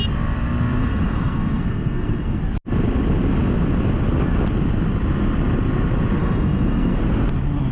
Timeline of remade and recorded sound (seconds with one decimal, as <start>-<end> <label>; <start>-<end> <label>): 0.0-0.8 recorded; 0.8-2.4 remade; 2.4-6.2 recorded; 6.2-7.0 remade; 7.0-7.7 recorded